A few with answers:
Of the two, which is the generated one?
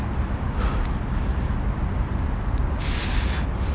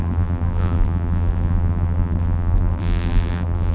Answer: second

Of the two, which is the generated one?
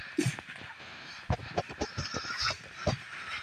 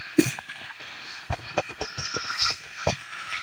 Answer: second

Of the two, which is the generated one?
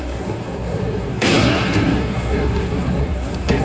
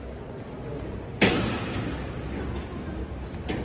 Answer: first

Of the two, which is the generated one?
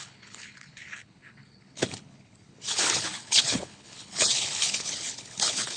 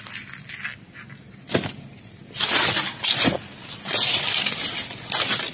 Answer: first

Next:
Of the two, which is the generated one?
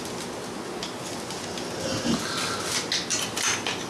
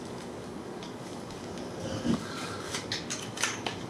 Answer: second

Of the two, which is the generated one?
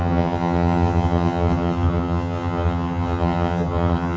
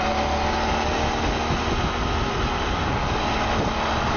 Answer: first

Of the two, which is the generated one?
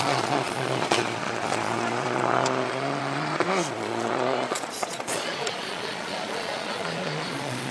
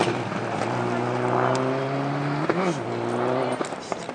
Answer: first